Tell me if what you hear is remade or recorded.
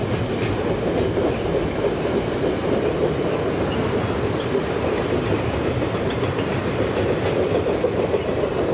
recorded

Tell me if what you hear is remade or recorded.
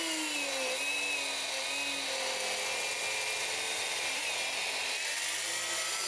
recorded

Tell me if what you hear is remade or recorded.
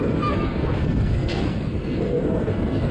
remade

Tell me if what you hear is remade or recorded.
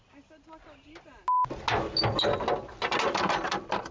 recorded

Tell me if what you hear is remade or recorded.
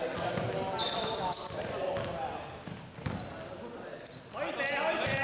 recorded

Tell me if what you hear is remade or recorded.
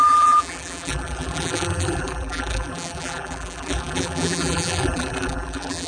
remade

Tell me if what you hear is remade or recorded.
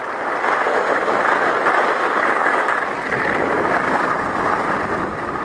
recorded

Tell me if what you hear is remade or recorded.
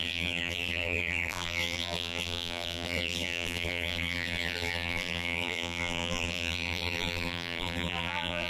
remade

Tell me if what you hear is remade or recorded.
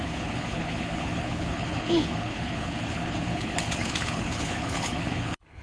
remade